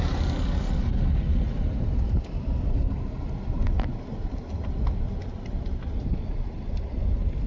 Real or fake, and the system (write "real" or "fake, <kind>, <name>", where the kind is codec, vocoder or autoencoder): real